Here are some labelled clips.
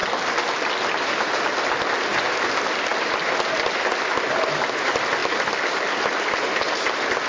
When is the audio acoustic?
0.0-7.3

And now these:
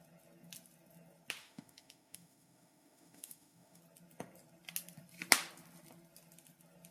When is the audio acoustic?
0.0-1.4; 3.8-6.9

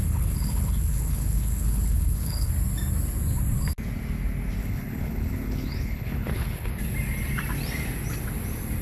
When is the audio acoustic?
2.5-4.6; 6.7-8.8

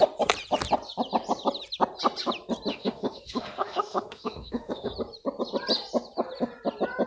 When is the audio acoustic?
0.0-2.7; 4.9-7.1

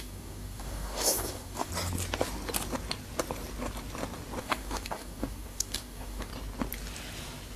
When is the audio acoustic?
1.7-4.4; 6.3-7.6

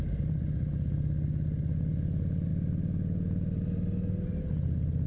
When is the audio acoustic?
0.0-5.1